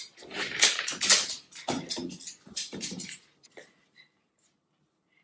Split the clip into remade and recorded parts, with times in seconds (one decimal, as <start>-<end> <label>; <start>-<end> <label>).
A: 0.0-1.9 recorded; 1.9-4.3 remade; 4.3-5.2 recorded